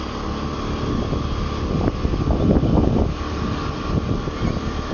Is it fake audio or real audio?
real